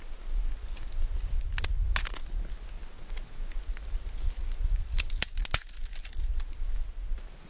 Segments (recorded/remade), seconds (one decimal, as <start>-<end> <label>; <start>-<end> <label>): 0.0-7.5 recorded